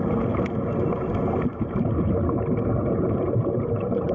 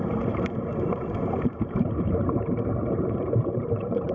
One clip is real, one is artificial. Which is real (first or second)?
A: first